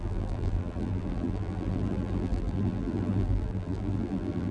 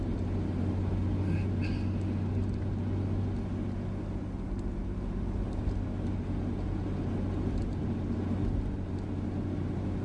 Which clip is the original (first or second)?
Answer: second